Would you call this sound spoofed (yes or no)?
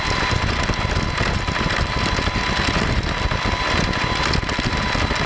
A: no